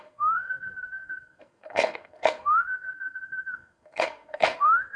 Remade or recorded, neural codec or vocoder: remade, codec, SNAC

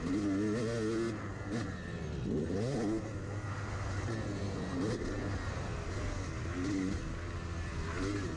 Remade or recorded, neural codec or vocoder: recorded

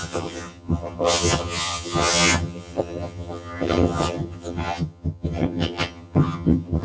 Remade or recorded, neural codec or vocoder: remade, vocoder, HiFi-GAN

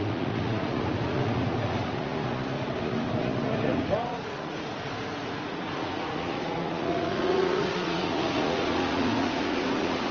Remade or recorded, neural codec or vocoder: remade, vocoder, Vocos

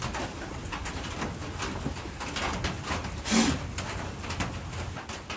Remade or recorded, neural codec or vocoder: recorded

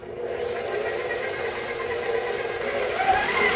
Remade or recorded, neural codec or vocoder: recorded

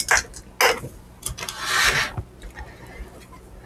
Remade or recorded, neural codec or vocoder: recorded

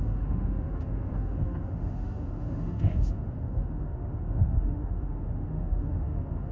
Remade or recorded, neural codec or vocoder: remade, autoencoder, DAC-VAE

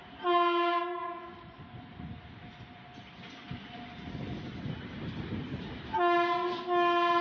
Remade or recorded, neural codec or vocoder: recorded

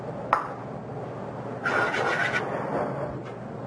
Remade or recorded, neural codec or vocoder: recorded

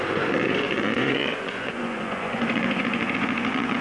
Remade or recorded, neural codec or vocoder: remade, vocoder, Vocos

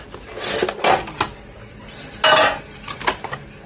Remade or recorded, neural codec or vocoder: recorded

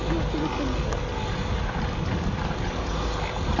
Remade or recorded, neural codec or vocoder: recorded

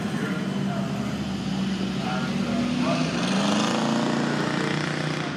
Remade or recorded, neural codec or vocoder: recorded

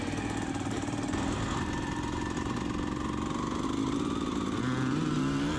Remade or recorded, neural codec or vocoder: recorded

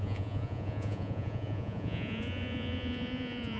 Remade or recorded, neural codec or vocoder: remade, vocoder, Vocos